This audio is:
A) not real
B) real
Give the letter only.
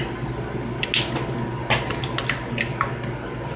B